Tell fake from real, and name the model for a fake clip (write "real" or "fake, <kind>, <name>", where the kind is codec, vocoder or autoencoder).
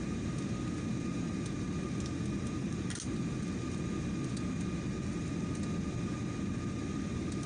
real